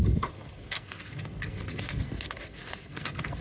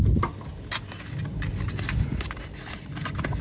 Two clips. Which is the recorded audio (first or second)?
second